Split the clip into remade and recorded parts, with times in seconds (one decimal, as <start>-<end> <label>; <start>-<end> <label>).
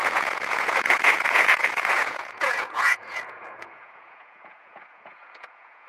0.0-5.9 remade